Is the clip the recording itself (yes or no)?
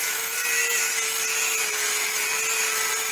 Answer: yes